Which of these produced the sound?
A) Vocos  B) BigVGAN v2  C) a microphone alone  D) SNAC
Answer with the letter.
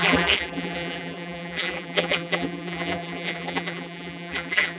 B